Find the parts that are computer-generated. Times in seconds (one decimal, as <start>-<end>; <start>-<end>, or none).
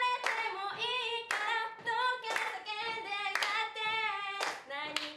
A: none